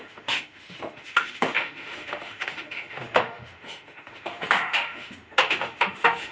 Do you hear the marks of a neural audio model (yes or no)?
yes